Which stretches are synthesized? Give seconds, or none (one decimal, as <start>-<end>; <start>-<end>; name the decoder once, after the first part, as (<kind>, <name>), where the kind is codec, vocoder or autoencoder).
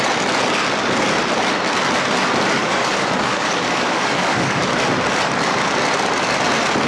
2.6-4.6 (codec, DAC)